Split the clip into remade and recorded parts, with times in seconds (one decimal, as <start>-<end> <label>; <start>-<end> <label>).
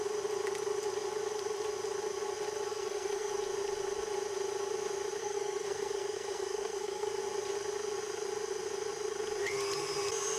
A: 0.0-2.7 recorded; 2.7-3.3 remade; 3.3-5.2 recorded; 5.2-7.2 remade; 7.2-10.4 recorded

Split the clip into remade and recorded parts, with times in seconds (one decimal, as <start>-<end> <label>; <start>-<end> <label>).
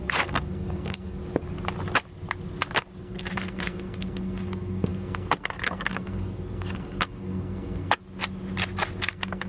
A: 0.0-1.2 remade; 1.2-3.0 recorded; 3.0-8.0 remade; 8.0-9.1 recorded; 9.1-9.5 remade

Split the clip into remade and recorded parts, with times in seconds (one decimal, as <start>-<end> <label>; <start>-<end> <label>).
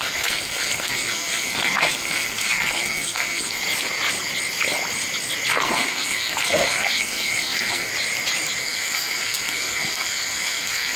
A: 0.0-3.6 remade; 3.6-5.5 recorded; 5.5-7.9 remade; 7.9-8.6 recorded; 8.6-11.0 remade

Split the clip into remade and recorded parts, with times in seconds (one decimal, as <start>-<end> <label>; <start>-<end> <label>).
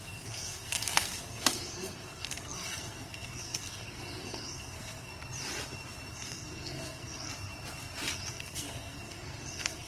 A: 0.0-5.1 remade; 5.1-6.1 recorded; 6.1-7.3 remade; 7.3-8.3 recorded; 8.3-9.9 remade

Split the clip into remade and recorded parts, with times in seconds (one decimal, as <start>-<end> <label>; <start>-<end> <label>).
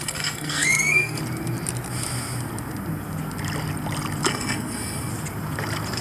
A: 0.0-1.2 remade; 1.2-4.3 recorded; 4.3-5.1 remade; 5.1-6.0 recorded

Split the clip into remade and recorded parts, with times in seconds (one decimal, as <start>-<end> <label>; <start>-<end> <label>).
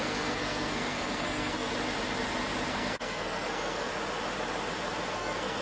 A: 0.0-1.7 remade; 1.7-2.7 recorded; 2.7-3.9 remade; 3.9-5.1 recorded; 5.1-5.6 remade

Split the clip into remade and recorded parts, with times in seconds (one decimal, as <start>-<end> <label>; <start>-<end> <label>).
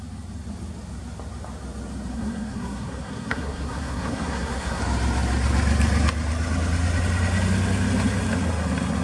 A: 0.0-2.1 recorded; 2.1-4.8 remade; 4.8-9.0 recorded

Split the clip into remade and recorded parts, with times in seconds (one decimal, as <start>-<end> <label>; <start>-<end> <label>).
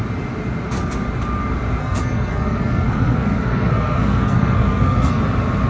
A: 0.0-1.8 recorded; 1.8-5.2 remade; 5.2-5.7 recorded